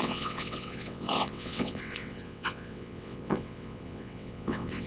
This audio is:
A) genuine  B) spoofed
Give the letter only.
B